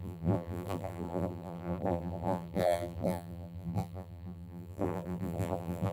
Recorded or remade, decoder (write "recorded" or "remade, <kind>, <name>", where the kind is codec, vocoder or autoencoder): remade, vocoder, BigVGAN v2